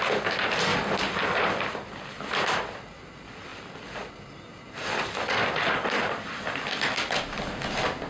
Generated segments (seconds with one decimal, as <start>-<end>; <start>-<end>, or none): none